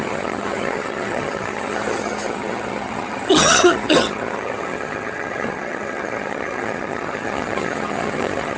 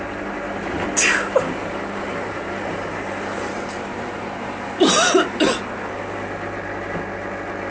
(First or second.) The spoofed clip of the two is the first